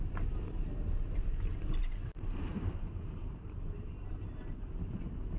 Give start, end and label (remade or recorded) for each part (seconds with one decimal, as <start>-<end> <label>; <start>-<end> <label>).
0.0-1.8 recorded; 1.8-5.0 remade; 5.0-5.4 recorded